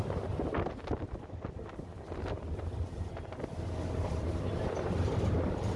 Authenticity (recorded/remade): recorded